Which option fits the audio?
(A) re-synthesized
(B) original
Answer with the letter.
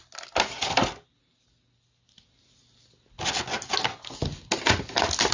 B